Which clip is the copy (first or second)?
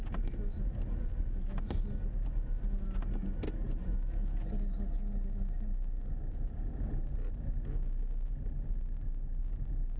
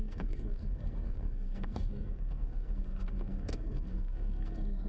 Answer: second